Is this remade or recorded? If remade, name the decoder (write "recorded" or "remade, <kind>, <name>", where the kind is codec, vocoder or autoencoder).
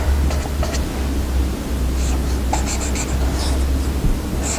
remade, vocoder, BigVGAN v2